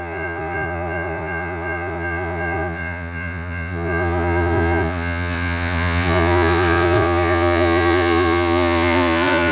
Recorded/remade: remade